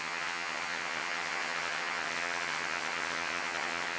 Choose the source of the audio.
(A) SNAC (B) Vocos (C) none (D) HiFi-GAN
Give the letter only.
D